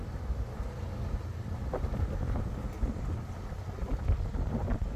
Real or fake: real